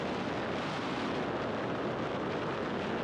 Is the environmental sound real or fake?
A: real